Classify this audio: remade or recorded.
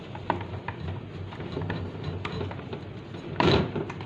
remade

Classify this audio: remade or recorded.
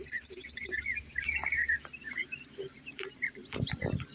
remade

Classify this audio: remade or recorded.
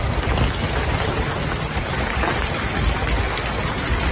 recorded